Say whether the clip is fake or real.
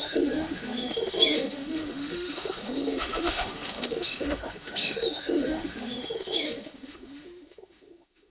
fake